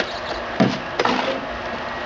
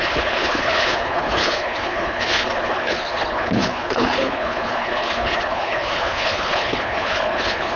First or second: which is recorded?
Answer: first